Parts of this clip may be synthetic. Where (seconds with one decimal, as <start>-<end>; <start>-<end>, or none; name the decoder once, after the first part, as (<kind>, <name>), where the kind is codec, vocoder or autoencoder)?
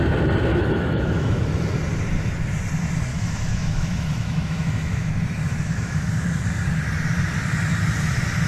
0.5-1.4 (autoencoder, DAC-VAE); 3.1-5.1; 5.5-6.1